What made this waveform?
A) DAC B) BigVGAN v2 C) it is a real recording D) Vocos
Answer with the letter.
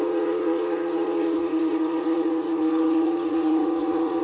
D